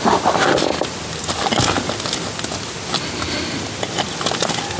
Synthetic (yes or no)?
no